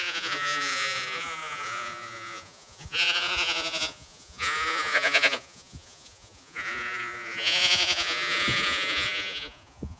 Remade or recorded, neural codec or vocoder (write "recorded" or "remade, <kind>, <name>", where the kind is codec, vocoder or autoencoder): remade, vocoder, Vocos